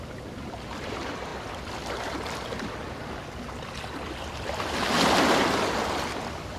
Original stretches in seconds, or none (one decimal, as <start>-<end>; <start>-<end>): 0.0-6.6